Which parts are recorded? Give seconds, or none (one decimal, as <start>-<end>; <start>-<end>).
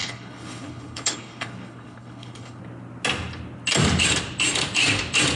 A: 2.6-5.4